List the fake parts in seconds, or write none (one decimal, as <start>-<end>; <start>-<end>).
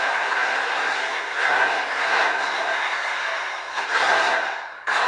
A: 0.0-5.1